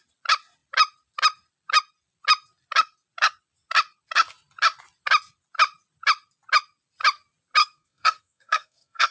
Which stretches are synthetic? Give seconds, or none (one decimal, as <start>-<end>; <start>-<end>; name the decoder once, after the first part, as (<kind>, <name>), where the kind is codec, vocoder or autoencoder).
7.6-9.1 (codec, SNAC)